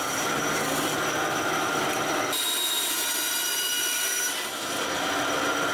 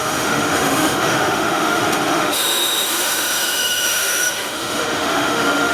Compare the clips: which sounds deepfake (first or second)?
second